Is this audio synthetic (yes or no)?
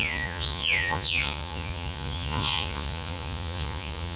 yes